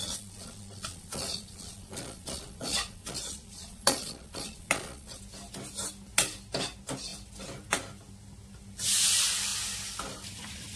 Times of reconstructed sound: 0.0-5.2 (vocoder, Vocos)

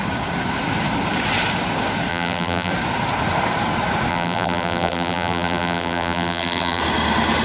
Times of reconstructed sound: 2.1-2.7 (vocoder, BigVGAN v2); 4.1-6.8

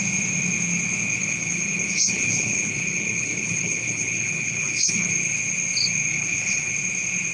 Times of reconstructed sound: 1.2-5.1 (codec, HILCodec); 6.1-6.7

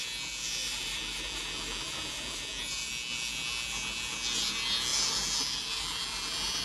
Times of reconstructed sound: 0.6-2.9 (vocoder, BigVGAN v2); 4.9-6.6

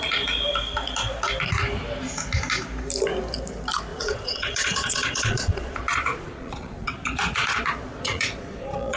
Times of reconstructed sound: 3.9-9.0 (vocoder, Vocos)